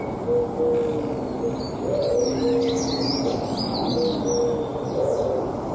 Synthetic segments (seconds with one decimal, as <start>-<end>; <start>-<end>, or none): none